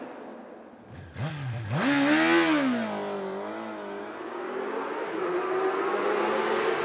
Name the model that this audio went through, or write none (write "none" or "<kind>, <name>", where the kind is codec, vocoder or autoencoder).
none